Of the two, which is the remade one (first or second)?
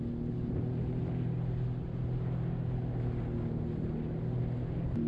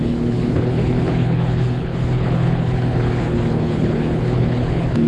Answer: second